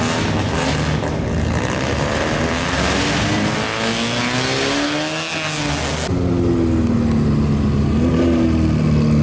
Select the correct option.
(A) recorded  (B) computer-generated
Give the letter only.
A